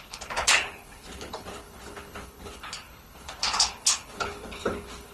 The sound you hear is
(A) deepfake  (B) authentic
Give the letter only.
A